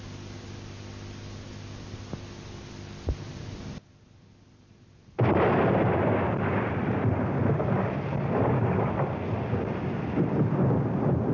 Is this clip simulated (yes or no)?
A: no